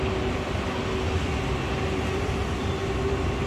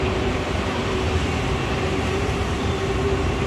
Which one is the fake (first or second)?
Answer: second